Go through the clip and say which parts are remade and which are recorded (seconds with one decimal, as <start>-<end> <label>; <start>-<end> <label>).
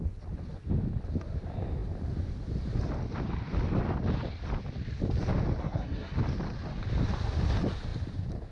0.0-5.6 recorded; 5.6-6.2 remade; 6.2-8.5 recorded